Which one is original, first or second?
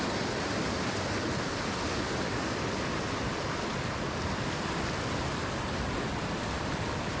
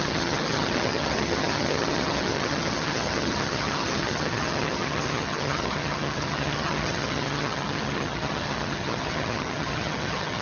first